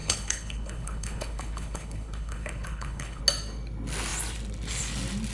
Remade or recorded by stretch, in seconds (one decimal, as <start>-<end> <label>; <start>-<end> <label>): 0.0-3.2 remade; 3.2-5.3 recorded